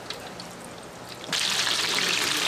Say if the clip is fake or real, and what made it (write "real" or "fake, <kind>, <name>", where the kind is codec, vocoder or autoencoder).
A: real